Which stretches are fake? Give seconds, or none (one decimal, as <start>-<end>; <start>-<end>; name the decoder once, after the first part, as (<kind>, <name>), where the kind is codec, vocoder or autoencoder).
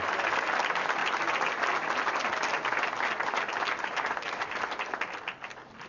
none